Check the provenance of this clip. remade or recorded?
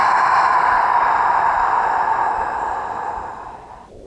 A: remade